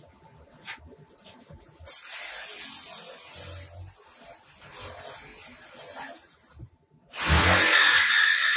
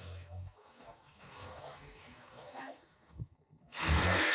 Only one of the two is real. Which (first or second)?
first